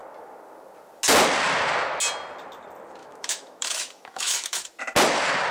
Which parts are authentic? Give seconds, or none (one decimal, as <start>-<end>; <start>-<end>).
0.0-3.0; 4.8-5.5